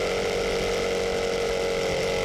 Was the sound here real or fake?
real